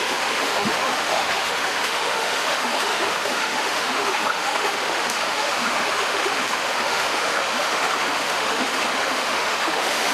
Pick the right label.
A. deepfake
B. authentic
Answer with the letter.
A